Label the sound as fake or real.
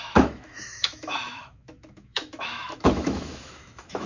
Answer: fake